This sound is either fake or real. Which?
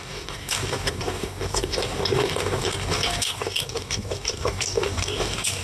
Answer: fake